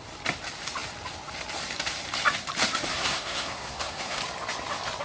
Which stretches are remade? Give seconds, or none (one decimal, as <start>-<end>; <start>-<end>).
2.9-4.2